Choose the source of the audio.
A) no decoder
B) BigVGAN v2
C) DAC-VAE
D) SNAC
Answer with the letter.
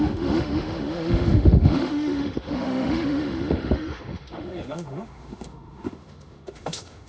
C